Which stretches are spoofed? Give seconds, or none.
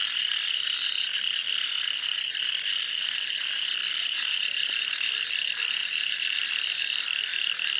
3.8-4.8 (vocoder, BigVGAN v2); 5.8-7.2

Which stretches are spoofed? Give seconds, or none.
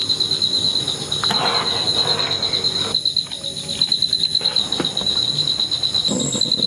none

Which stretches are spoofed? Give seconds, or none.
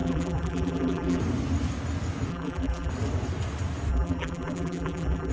0.0-1.2 (vocoder, BigVGAN v2); 2.3-2.9; 3.9-5.3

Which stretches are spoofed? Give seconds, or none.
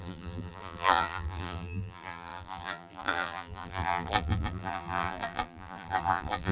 0.0-6.5 (vocoder, BigVGAN v2)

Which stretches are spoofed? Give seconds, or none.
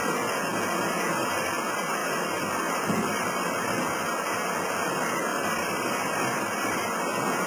2.0-3.8 (vocoder, BigVGAN v2); 5.3-6.8